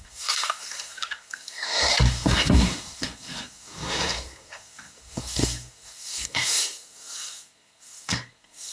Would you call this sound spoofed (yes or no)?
yes